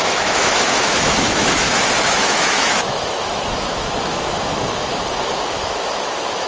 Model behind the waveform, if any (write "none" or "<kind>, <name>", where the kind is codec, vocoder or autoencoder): autoencoder, DAC-VAE